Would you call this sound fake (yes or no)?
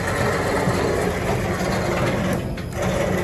no